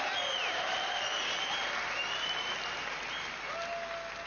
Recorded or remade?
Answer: recorded